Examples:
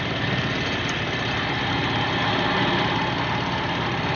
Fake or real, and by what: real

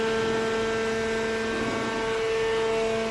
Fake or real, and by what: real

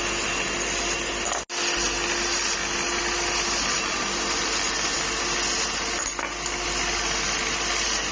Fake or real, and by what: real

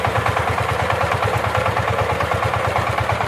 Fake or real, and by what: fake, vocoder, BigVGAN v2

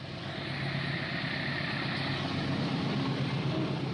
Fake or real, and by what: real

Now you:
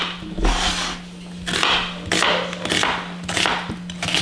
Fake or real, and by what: real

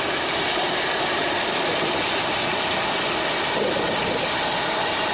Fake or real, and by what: real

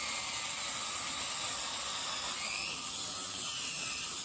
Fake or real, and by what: real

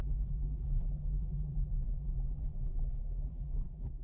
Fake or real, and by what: fake, vocoder, BigVGAN v2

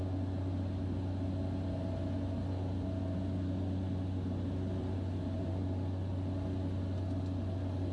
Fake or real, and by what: real